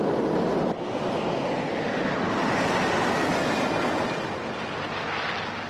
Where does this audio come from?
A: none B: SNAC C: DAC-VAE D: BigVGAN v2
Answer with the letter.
A